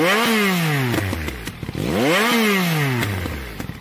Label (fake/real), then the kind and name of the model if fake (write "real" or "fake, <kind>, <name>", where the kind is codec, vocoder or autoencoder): real